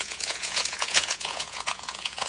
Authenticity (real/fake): fake